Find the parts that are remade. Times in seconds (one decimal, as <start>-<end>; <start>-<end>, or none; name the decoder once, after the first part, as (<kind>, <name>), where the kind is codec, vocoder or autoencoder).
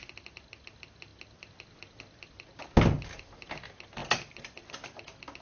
none